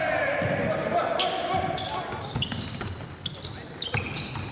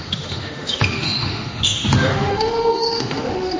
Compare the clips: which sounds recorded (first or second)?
first